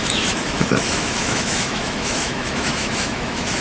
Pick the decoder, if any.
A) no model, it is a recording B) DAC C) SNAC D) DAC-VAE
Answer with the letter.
D